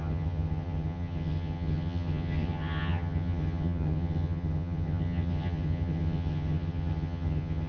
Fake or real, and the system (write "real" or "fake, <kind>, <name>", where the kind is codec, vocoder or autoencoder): fake, vocoder, HiFi-GAN